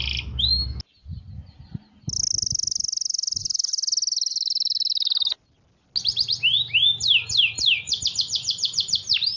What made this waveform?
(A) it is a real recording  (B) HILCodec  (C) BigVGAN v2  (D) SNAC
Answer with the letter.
A